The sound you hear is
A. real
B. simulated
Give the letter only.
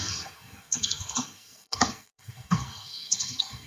B